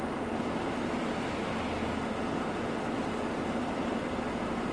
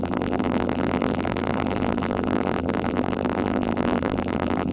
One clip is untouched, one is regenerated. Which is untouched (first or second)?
first